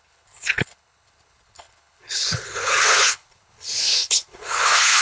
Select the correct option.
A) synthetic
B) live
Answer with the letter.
A